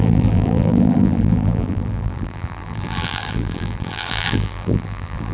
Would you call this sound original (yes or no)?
no